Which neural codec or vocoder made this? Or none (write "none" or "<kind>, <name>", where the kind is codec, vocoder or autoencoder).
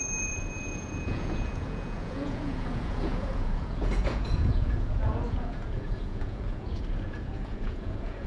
vocoder, Vocos